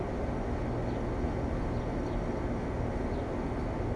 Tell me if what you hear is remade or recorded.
recorded